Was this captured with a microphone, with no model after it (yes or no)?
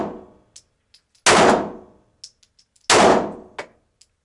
yes